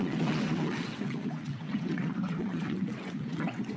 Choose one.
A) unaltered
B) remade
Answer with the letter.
B